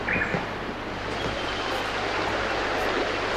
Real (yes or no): yes